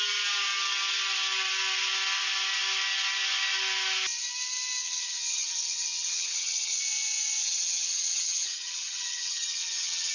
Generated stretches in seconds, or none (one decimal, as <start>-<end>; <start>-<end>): 4.8-6.8; 7.4-10.1